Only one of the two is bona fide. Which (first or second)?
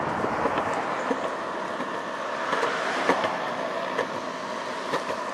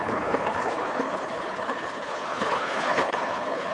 first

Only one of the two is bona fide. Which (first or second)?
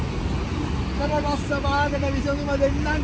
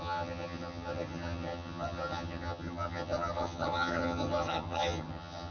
first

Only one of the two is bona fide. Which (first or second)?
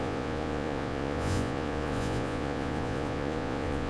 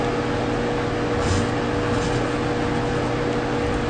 second